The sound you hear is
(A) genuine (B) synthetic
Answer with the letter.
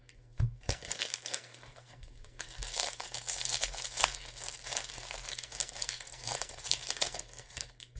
B